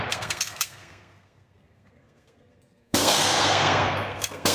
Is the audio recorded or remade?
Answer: remade